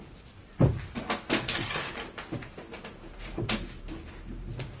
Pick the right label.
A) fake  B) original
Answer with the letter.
B